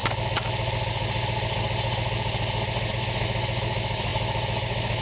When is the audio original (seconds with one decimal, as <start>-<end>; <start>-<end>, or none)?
0.0-2.9

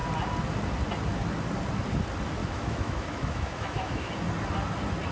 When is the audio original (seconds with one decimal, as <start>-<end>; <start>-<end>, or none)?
0.0-2.4; 4.1-5.1

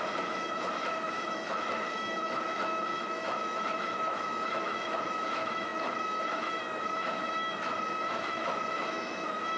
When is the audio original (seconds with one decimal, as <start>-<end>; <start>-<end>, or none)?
none

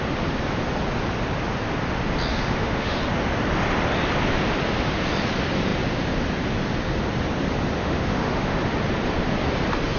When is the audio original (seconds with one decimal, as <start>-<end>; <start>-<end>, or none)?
0.0-2.3; 3.0-7.8; 8.6-10.0